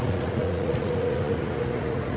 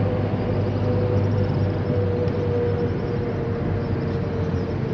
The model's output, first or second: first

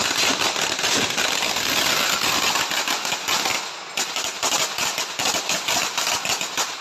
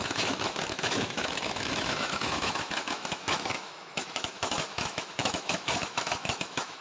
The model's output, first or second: second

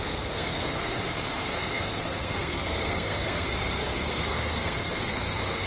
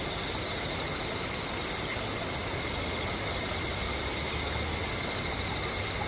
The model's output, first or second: first